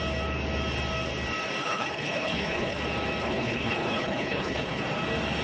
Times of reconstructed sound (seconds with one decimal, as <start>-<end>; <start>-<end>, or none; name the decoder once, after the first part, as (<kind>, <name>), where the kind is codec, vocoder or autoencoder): 1.6-2.8 (codec, HILCodec); 3.2-4.8